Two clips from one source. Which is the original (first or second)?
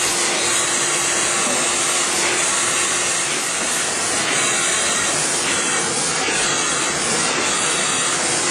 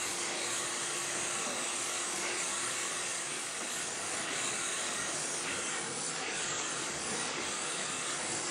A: first